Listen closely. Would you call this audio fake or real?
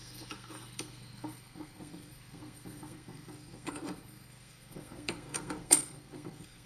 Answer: fake